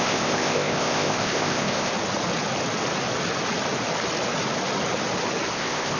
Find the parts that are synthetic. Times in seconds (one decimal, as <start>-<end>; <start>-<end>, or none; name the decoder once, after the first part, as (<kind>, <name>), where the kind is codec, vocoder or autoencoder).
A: 0.0-1.9 (codec, ZipCodec); 5.5-6.0